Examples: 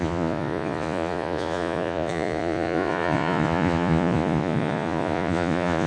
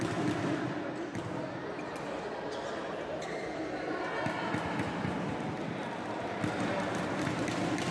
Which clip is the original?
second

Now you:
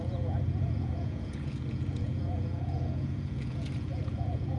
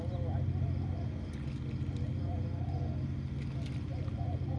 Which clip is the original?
second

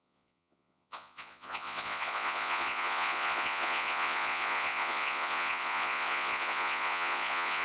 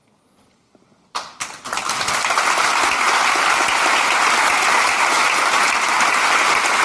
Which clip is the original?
second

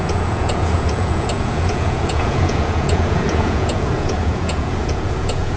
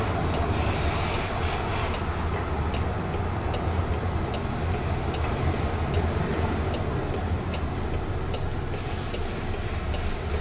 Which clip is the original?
second